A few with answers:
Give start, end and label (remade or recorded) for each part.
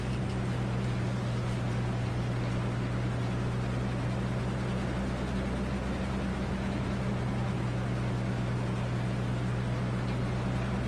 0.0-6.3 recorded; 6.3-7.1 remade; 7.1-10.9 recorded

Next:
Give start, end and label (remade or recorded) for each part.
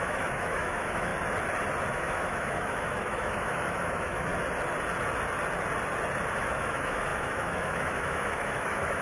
0.0-1.1 remade; 1.1-1.9 recorded; 1.9-4.3 remade; 4.3-6.3 recorded; 6.3-9.0 remade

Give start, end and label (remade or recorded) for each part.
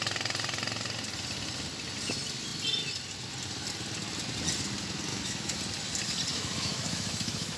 0.0-5.1 recorded; 5.1-5.6 remade; 5.6-6.3 recorded; 6.3-7.6 remade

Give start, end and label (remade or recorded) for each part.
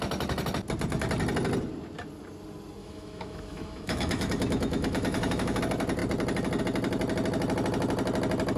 0.0-2.8 recorded; 2.8-5.6 remade; 5.6-8.6 recorded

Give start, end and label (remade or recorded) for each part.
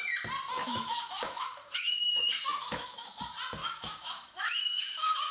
0.0-0.6 recorded; 0.6-3.2 remade; 3.2-3.6 recorded; 3.6-5.3 remade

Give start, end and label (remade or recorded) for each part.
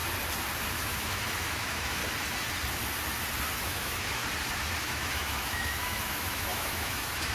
0.0-0.7 recorded; 0.7-2.0 remade; 2.0-3.6 recorded; 3.6-4.2 remade; 4.2-4.8 recorded; 4.8-7.3 remade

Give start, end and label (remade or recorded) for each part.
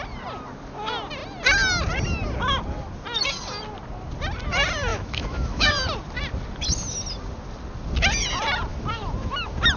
0.0-4.9 recorded; 4.9-5.7 remade; 5.7-9.8 recorded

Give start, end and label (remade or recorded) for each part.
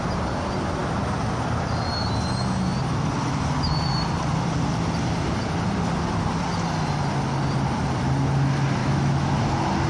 0.0-8.8 recorded; 8.8-9.3 remade; 9.3-9.9 recorded